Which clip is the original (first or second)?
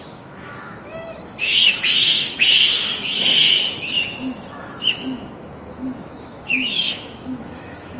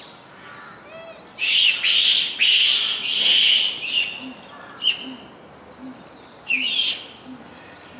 second